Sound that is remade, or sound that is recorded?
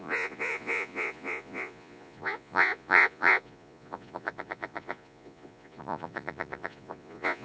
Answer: remade